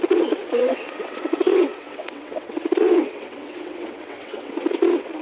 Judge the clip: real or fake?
fake